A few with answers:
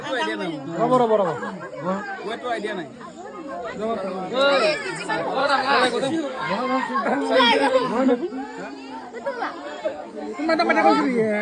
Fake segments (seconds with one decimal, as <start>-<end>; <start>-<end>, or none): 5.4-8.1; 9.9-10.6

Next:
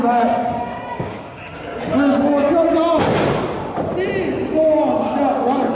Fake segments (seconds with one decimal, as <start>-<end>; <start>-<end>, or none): 0.4-1.8

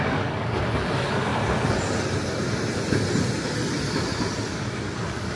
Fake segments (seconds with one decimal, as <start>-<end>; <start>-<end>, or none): 0.0-1.3; 4.5-5.4

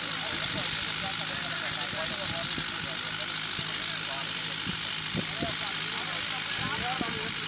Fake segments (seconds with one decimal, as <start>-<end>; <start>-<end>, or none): none